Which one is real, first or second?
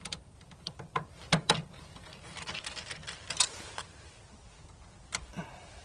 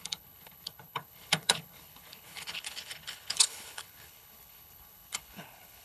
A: first